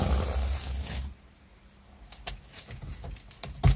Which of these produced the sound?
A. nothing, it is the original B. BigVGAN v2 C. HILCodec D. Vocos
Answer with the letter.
A